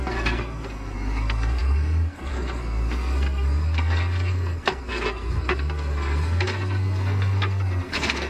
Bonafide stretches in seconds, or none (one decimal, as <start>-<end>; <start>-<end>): none